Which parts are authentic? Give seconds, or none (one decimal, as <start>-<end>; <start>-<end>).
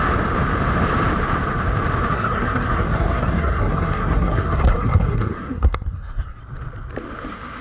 0.0-2.1; 6.4-7.6